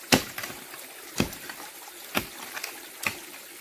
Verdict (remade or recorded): recorded